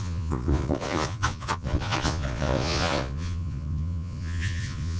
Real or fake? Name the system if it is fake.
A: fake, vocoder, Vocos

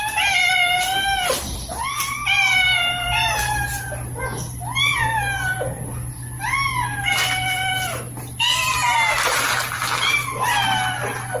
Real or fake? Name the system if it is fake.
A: real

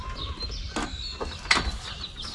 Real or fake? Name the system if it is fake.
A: real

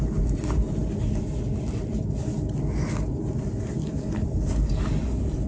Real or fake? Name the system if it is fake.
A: real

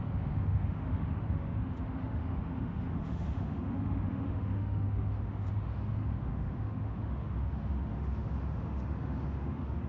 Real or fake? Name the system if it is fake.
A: fake, autoencoder, DAC-VAE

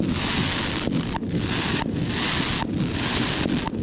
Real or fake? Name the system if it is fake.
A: real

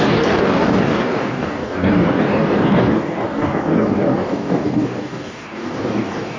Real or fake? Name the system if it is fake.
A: fake, codec, DAC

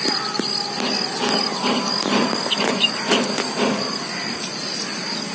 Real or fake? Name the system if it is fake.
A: real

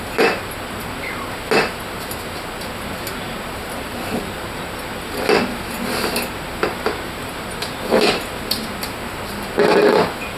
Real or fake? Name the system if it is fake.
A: real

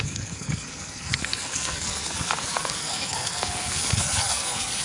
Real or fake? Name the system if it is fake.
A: fake, codec, SNAC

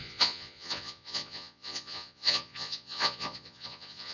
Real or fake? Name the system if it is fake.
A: fake, vocoder, Vocos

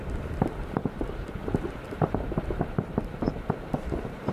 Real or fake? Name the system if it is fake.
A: real